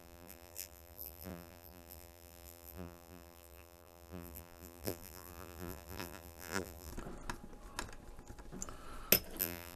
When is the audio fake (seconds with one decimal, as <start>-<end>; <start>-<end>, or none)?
0.0-6.9; 9.4-9.8